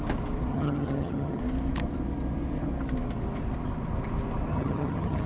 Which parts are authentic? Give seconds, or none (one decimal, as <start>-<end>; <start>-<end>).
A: 0.0-0.5; 1.4-4.5